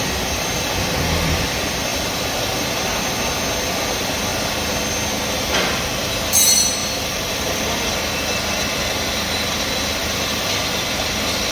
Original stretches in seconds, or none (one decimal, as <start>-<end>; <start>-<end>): 0.0-6.8; 7.6-10.0; 10.5-11.5